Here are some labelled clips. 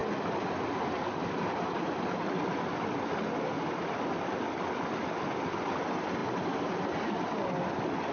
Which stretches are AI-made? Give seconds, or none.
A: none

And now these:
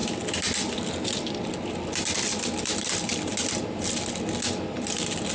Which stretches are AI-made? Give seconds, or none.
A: none

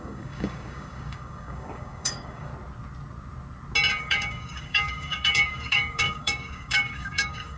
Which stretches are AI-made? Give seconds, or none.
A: 0.0-2.5; 3.9-7.6

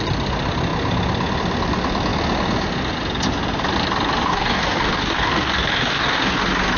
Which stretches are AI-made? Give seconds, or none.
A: 4.3-6.3

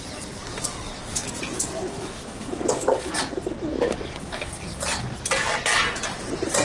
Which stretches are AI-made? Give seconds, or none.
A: 0.4-1.4; 1.9-3.1; 3.7-4.5

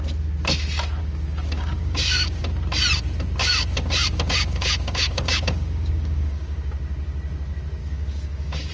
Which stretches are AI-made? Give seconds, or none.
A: 1.0-2.4; 3.4-6.7; 7.8-8.7

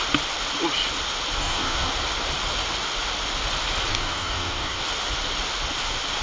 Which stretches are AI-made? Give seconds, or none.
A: 1.4-1.9; 3.9-4.8